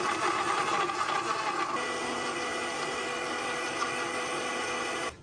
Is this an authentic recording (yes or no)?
yes